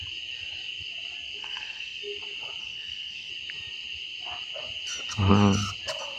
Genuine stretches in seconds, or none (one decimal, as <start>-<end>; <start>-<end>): 0.0-1.4; 2.0-2.6; 3.3-6.2